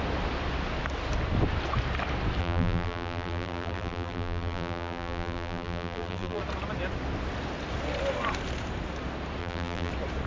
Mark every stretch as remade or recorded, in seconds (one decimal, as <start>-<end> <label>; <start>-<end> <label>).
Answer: 0.0-2.4 recorded; 2.4-6.4 remade; 6.4-9.4 recorded; 9.4-9.9 remade; 9.9-10.3 recorded